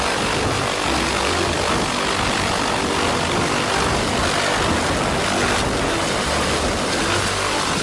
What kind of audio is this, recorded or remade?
recorded